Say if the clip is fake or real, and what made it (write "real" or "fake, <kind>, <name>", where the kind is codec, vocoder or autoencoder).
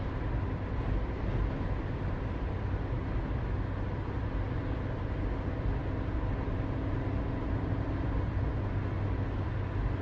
real